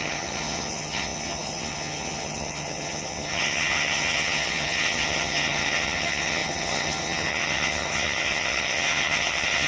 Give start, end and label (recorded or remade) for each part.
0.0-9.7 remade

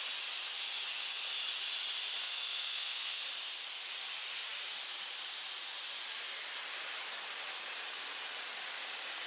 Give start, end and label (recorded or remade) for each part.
0.0-2.2 recorded; 2.2-3.2 remade; 3.2-9.3 recorded

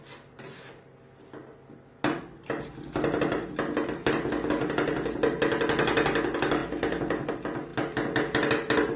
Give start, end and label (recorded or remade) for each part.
0.0-9.0 recorded